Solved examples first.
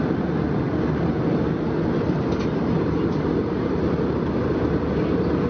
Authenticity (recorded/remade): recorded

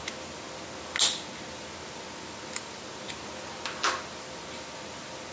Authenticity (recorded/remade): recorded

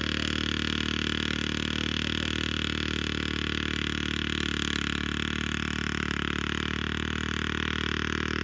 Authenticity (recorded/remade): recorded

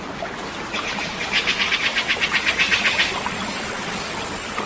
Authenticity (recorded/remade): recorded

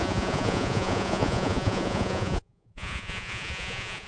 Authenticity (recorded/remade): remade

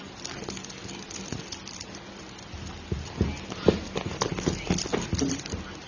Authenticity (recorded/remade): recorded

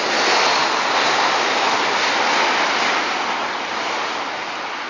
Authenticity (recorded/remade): recorded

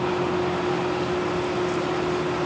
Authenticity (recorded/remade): recorded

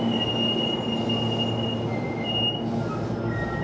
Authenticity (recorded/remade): recorded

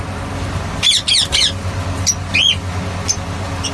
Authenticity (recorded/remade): recorded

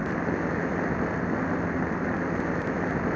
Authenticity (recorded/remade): recorded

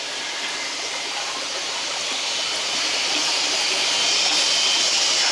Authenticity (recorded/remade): recorded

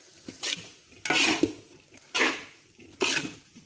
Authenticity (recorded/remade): recorded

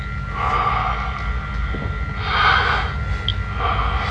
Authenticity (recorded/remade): recorded